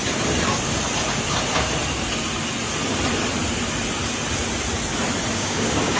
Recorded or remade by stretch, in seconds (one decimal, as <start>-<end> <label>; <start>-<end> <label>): 0.0-5.3 recorded; 5.3-6.0 remade